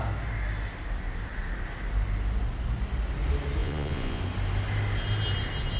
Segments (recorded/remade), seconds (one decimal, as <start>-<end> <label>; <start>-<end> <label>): 0.0-3.6 recorded; 3.6-4.2 remade; 4.2-5.8 recorded